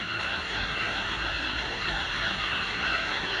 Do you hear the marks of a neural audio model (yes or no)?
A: yes